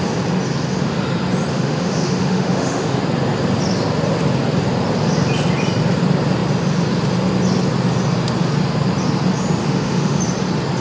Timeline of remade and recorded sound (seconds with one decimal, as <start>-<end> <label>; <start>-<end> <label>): 0.0-1.5 recorded; 1.5-3.0 remade; 3.0-9.6 recorded; 9.6-10.2 remade; 10.2-10.8 recorded